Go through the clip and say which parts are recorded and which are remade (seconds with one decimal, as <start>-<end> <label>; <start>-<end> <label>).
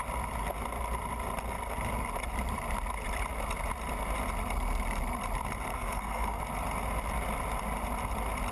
0.0-5.7 recorded; 5.7-6.4 remade; 6.4-8.5 recorded